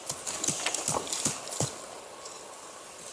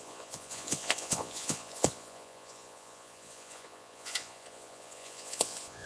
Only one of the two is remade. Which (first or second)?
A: second